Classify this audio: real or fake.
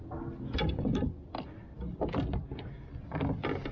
real